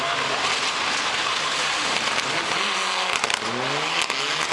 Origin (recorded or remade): recorded